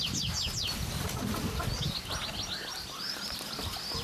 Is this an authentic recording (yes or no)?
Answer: yes